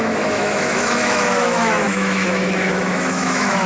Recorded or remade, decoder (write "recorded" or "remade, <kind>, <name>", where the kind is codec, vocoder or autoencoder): remade, autoencoder, DAC-VAE